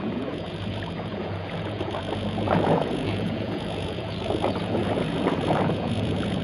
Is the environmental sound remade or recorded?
remade